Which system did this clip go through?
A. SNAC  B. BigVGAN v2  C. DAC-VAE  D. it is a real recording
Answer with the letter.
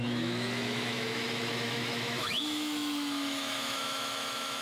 C